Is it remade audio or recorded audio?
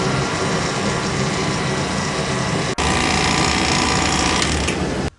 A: recorded